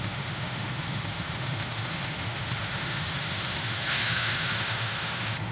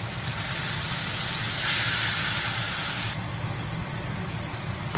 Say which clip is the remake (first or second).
first